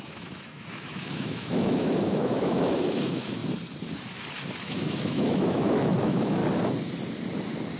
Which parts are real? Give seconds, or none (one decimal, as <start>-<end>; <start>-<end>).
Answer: 3.4-4.6; 6.4-7.8